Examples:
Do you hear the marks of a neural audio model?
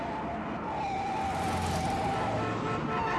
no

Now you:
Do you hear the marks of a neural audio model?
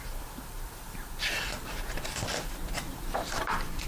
yes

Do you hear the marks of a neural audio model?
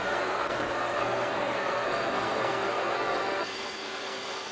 yes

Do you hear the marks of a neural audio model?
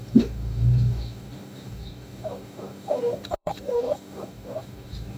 yes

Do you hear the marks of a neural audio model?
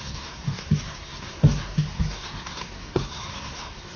yes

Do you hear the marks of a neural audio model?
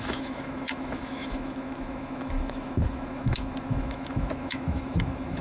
yes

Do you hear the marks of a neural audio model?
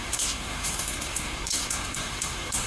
yes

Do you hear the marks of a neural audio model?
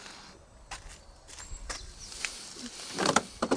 no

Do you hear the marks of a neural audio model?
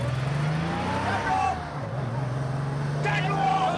no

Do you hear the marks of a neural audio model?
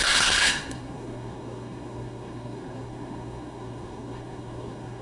yes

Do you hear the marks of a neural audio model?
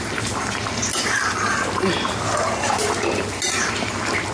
no